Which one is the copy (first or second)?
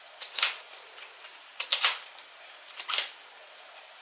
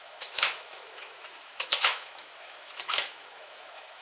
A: second